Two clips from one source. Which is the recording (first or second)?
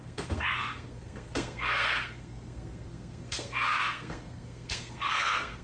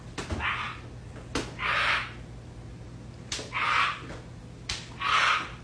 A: second